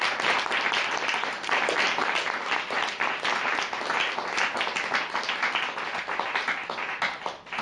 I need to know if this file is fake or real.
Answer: real